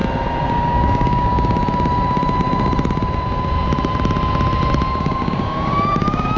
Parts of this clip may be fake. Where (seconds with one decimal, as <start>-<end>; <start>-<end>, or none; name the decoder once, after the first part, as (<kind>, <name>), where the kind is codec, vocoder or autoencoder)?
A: 0.5-1.6 (codec, DAC); 5.0-6.4